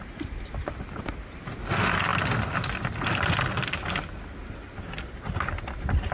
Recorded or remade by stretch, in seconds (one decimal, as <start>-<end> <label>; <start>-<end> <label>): 0.0-6.1 recorded